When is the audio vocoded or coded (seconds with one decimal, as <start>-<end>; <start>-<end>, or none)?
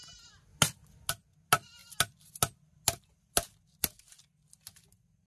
none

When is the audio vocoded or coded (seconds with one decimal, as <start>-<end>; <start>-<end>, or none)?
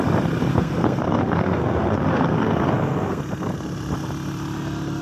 0.5-3.2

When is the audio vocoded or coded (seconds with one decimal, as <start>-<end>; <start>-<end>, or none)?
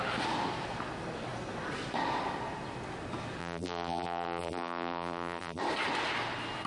3.4-5.6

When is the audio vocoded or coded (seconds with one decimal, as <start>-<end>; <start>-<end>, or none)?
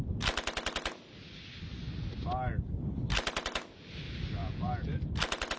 4.4-4.9